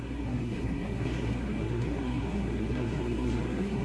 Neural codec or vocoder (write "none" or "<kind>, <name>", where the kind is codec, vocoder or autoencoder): codec, SNAC